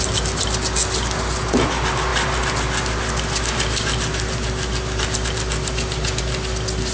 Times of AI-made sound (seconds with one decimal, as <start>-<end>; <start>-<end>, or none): none